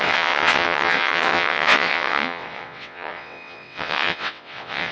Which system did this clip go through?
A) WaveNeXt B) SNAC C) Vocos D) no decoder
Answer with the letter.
A